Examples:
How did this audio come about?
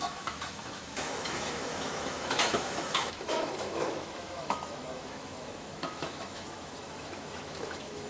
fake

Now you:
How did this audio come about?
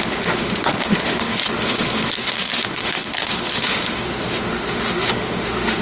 fake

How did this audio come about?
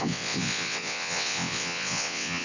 fake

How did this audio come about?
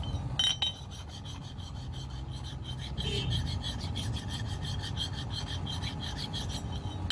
real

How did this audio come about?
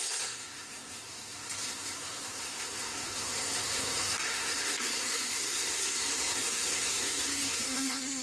fake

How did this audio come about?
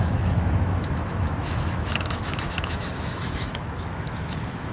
fake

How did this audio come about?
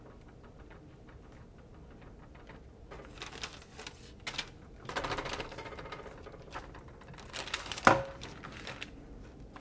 real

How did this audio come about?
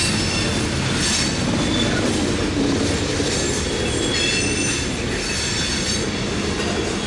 real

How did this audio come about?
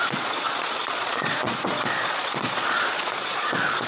fake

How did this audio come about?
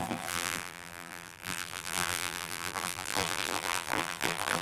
fake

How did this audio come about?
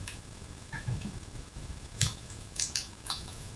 fake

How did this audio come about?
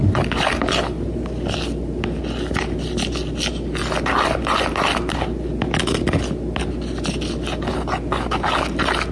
real